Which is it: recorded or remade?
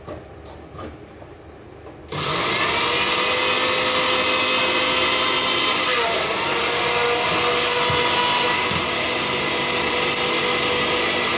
recorded